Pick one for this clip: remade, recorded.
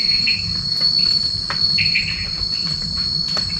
remade